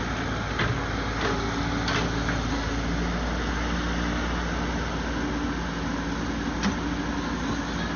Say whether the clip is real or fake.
real